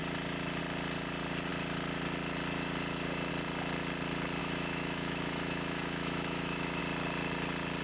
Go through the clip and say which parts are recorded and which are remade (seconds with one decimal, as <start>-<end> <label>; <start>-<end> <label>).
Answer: 0.0-4.4 recorded; 4.4-6.8 remade; 6.8-7.8 recorded